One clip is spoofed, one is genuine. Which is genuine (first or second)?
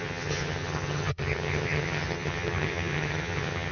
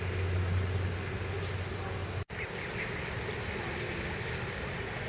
second